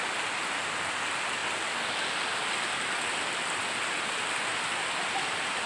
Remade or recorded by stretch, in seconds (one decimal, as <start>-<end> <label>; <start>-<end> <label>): 0.0-5.7 recorded